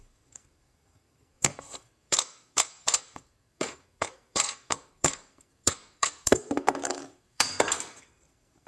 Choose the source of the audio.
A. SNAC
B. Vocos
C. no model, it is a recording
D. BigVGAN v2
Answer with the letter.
A